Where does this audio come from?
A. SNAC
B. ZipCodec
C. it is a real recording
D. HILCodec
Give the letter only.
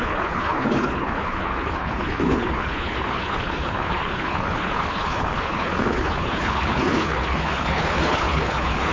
D